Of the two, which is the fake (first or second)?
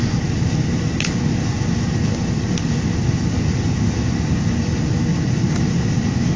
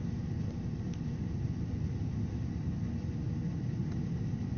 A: second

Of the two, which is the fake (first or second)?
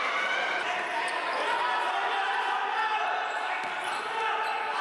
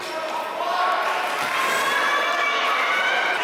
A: first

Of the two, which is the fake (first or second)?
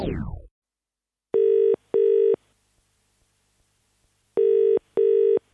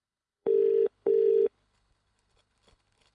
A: second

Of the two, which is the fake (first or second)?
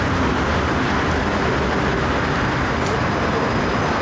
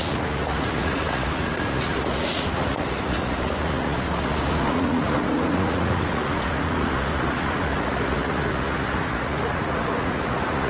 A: second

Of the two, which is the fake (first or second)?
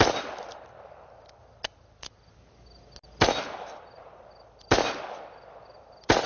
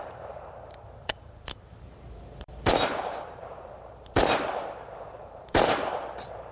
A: second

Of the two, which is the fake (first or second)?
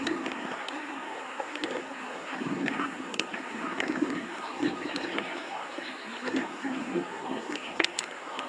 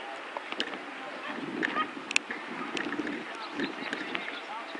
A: first